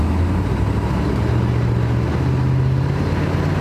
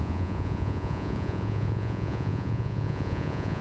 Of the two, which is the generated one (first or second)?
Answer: second